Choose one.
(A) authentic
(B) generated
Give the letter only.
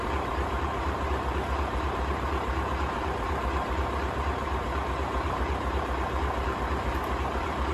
B